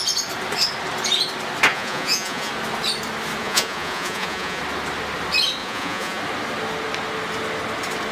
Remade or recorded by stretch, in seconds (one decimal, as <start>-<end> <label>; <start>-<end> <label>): 0.0-1.7 recorded; 1.7-2.5 remade; 2.5-3.4 recorded; 3.4-4.6 remade; 4.6-5.6 recorded; 5.6-6.2 remade; 6.2-8.1 recorded